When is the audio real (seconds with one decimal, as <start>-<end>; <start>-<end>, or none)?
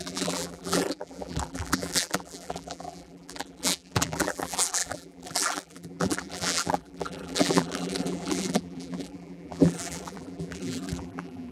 none